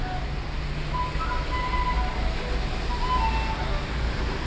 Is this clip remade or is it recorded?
recorded